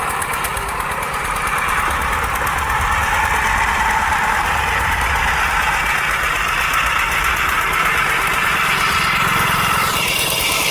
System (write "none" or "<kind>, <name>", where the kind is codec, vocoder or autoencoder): none